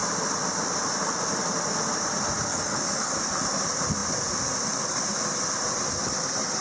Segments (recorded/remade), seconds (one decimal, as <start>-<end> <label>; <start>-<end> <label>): 0.0-2.5 recorded; 2.5-3.2 remade; 3.2-6.6 recorded